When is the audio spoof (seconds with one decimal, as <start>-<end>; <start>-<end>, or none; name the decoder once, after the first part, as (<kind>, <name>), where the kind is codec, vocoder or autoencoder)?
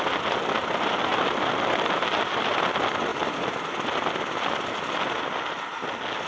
1.1-1.9 (vocoder, BigVGAN v2); 3.1-3.7